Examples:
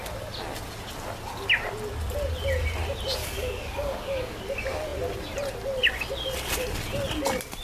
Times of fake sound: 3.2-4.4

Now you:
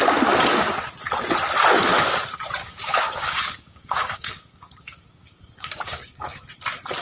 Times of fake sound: 2.6-6.5

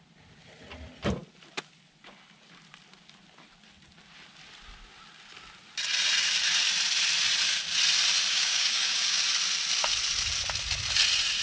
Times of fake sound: 8.3-9.2

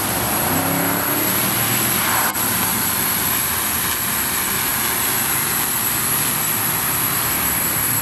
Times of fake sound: 0.0-4.7; 6.3-8.0

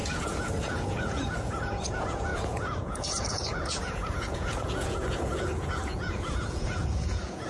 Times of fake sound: 0.0-7.5

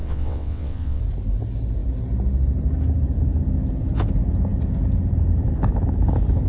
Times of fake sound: 0.0-1.0

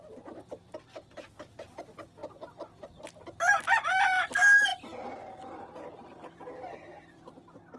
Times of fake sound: 2.2-3.0; 4.7-7.8